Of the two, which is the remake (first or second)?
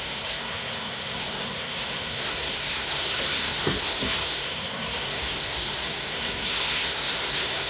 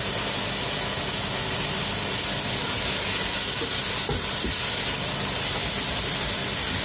first